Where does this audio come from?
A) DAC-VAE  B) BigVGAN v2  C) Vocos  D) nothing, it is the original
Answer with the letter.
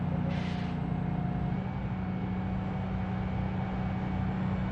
D